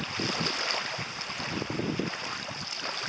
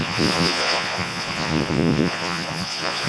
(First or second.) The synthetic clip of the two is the second